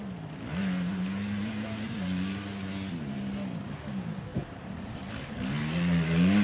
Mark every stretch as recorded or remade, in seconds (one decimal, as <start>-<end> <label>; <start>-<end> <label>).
0.0-6.4 recorded